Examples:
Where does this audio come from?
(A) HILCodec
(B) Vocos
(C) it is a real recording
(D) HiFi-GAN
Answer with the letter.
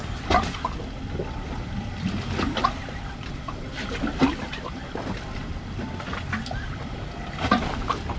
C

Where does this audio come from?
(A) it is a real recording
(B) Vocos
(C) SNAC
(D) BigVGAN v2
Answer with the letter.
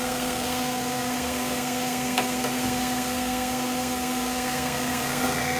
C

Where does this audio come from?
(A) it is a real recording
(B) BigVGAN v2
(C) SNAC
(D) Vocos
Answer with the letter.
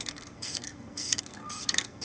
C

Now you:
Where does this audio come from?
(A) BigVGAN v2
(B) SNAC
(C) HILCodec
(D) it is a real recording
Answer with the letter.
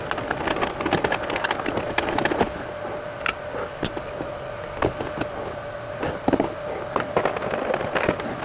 D